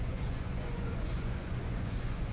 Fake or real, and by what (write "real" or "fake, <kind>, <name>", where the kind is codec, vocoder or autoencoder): fake, vocoder, Vocos